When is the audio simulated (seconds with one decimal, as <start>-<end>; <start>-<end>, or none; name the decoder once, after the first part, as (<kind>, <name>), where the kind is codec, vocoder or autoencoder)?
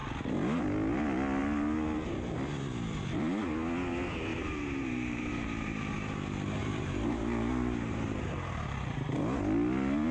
4.3-5.3 (vocoder, BigVGAN v2); 6.6-9.2